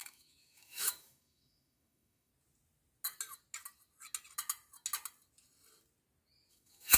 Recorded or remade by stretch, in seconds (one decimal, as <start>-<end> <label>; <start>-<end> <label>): 0.0-2.3 remade; 2.3-6.5 recorded; 6.5-7.0 remade